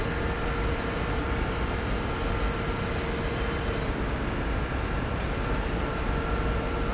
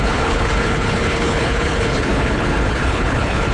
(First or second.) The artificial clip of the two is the second